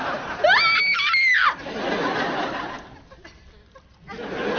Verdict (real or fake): real